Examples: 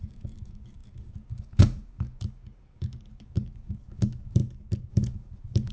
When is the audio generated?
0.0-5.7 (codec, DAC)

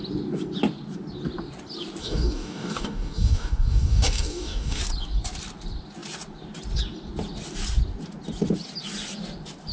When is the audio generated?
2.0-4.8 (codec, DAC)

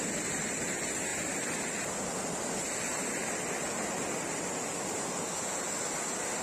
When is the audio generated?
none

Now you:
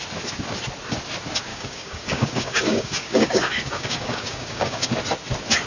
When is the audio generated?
1.5-4.9 (codec, DAC)

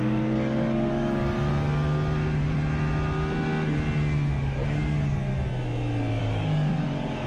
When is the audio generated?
0.0-1.5 (codec, DAC); 4.4-5.3; 6.2-7.3

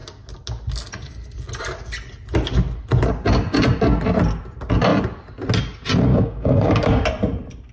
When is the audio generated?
6.1-7.0 (codec, DAC)

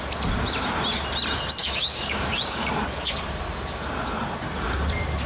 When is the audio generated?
1.6-2.7 (codec, DAC)